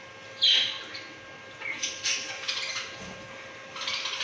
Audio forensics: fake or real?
real